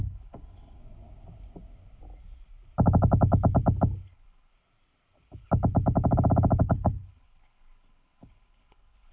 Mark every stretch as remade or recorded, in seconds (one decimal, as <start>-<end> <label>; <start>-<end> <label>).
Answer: 0.0-0.8 remade; 0.8-4.1 recorded; 4.1-4.5 remade; 4.5-6.6 recorded; 6.6-9.1 remade